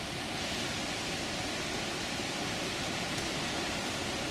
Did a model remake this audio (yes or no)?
no